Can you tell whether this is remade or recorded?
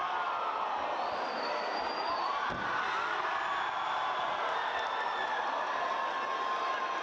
recorded